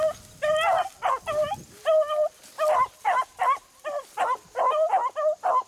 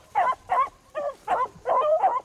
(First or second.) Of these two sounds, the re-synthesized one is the second